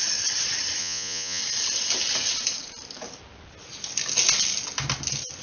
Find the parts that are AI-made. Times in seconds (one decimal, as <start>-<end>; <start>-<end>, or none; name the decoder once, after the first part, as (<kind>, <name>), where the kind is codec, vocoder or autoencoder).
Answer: 0.8-1.4 (vocoder, Vocos)